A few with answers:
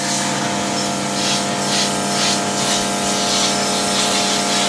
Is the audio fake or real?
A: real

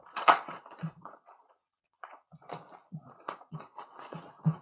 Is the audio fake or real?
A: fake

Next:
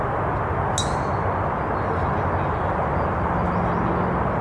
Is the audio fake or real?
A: real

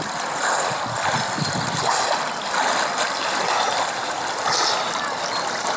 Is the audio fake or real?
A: real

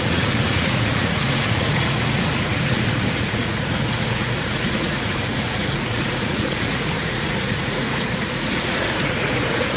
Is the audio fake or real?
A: fake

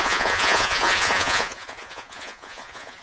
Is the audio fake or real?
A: fake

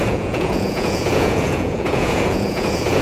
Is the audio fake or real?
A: fake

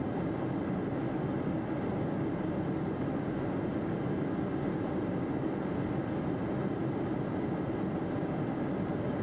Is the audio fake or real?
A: real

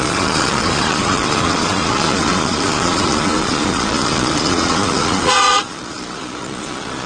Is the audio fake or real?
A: fake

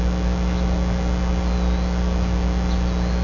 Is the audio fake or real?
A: real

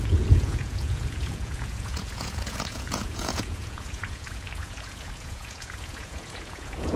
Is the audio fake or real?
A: fake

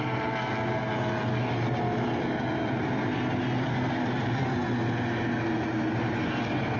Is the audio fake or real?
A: real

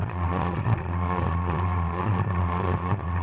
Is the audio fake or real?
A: fake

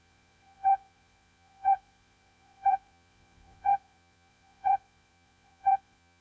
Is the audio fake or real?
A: fake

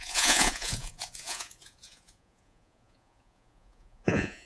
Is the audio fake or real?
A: fake